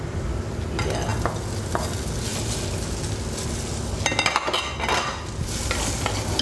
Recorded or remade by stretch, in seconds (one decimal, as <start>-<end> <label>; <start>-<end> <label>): 0.0-6.4 recorded